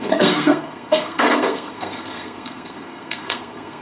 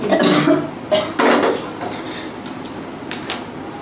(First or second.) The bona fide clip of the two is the second